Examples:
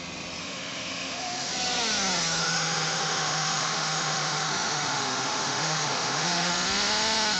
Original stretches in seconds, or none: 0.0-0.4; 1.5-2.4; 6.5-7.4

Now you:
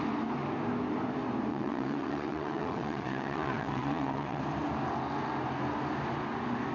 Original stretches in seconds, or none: 0.0-1.5; 4.4-6.7

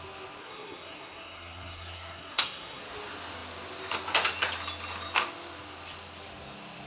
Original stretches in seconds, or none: 0.0-0.4; 2.8-6.9

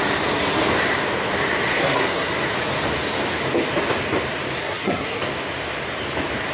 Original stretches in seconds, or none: 0.0-1.8; 2.3-4.6; 5.2-6.5

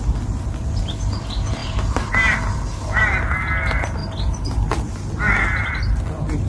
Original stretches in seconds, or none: 0.0-1.6; 2.3-4.0; 4.7-6.5